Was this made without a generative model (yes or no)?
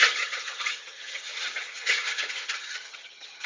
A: no